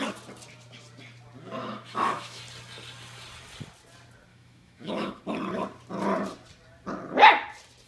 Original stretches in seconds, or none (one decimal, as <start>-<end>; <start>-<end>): 0.0-1.6; 2.4-4.3; 5.2-7.9